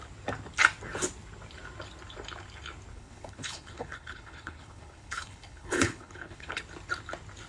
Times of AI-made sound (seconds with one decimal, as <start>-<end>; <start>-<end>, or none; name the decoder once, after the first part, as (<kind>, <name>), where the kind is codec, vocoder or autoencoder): 2.9-6.6 (codec, HILCodec)